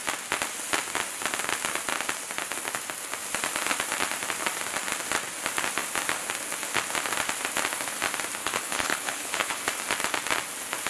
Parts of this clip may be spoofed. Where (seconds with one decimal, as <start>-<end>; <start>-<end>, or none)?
8.4-9.6